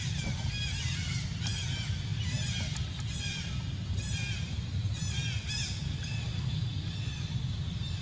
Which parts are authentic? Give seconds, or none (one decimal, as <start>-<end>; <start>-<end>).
0.0-8.0